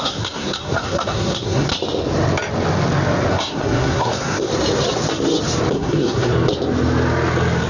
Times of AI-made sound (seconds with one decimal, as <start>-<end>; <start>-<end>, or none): 0.0-1.7; 3.3-4.5; 5.7-6.3